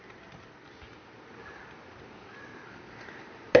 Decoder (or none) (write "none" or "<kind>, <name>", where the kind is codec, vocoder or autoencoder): none